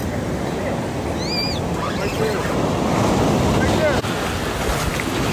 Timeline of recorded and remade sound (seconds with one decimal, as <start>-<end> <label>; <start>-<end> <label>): 0.0-5.3 recorded